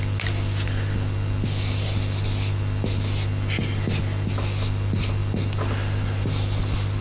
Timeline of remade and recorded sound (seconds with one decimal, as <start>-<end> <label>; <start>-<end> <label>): 0.0-7.0 recorded